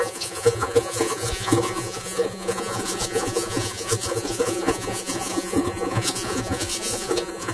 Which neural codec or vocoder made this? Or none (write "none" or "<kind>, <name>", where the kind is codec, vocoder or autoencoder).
vocoder, Vocos